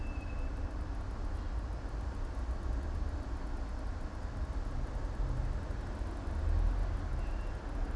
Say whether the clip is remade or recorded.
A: recorded